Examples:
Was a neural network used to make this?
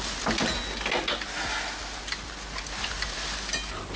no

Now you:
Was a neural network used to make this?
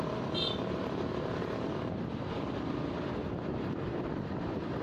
no